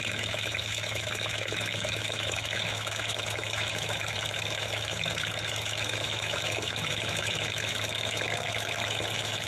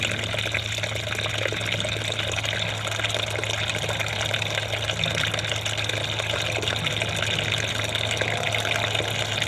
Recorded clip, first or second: second